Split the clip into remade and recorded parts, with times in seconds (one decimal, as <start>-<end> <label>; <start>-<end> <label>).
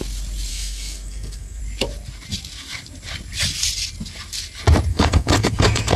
0.0-0.5 recorded; 0.5-1.6 remade; 1.6-4.9 recorded; 4.9-6.0 remade